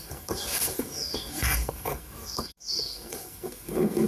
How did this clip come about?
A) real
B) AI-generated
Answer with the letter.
B